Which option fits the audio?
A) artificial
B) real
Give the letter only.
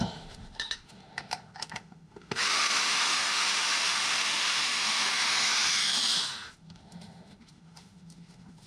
A